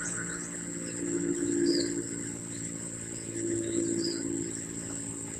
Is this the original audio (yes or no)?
no